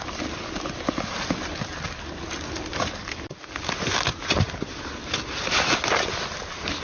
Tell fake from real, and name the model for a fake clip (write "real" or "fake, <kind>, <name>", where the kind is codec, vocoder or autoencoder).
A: real